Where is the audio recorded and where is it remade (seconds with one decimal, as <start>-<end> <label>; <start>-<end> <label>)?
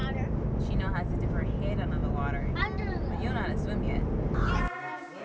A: 0.0-5.2 recorded